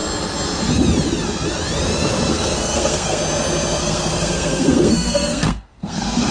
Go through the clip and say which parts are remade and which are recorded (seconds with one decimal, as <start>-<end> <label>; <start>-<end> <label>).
0.0-2.3 recorded; 2.3-3.2 remade; 3.2-3.8 recorded; 3.8-6.3 remade